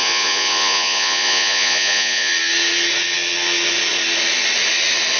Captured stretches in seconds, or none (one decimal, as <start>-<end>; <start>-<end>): 2.3-5.2

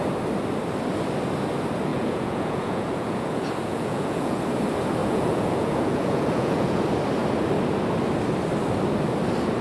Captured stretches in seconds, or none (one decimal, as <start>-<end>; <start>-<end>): 0.0-1.9; 4.4-5.0; 6.8-9.6